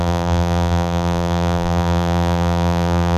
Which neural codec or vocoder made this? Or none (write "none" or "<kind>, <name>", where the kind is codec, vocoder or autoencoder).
vocoder, BigVGAN v2